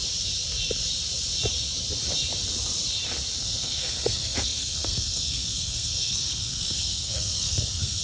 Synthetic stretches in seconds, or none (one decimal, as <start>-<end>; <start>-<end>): 3.4-8.0